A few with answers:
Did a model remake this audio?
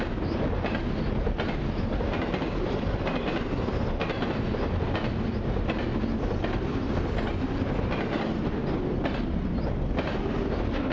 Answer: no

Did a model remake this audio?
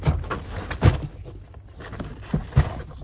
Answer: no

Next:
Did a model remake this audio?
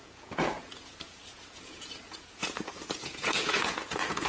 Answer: yes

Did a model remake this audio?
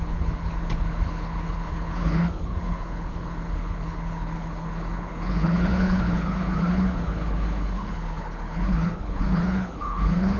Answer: yes